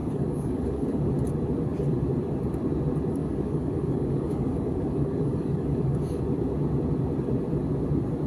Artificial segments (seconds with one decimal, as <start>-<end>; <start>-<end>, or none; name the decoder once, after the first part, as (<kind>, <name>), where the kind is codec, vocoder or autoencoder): 0.0-1.1 (codec, DAC); 3.2-6.2